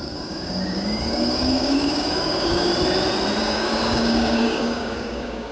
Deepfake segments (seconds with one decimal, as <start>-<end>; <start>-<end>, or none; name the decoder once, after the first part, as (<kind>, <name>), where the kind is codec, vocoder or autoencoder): 0.0-2.7 (codec, DAC); 3.4-5.5